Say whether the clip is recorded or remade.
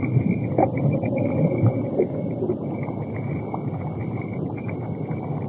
recorded